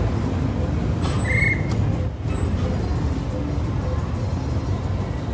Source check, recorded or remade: recorded